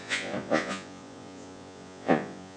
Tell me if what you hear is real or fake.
fake